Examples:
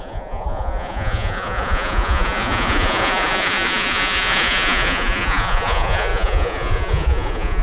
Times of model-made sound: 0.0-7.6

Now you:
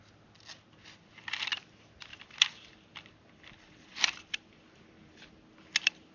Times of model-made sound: 2.1-5.3